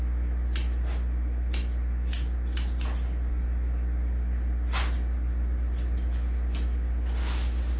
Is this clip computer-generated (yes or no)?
no